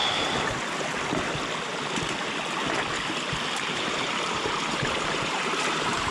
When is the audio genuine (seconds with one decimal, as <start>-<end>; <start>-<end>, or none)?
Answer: 0.0-3.7